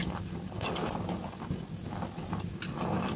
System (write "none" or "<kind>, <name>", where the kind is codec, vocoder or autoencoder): none